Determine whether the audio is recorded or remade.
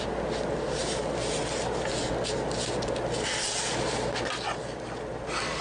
recorded